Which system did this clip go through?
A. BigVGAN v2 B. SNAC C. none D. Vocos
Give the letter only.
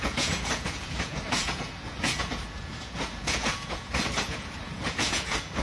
D